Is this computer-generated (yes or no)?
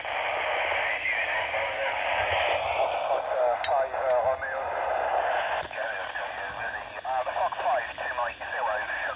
no